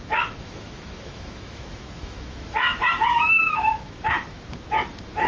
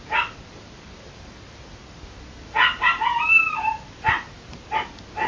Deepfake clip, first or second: first